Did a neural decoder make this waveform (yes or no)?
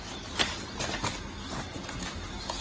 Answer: no